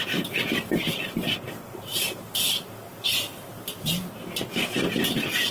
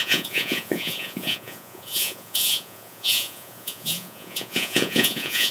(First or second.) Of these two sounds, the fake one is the second